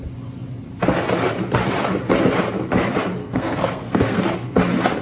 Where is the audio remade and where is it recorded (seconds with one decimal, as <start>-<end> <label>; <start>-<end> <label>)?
0.0-3.2 recorded; 3.2-4.2 remade; 4.2-5.0 recorded